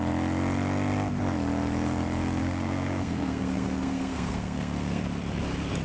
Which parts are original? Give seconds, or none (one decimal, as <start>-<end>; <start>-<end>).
0.0-2.4; 5.0-5.8